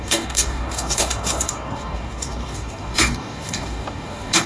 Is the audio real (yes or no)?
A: no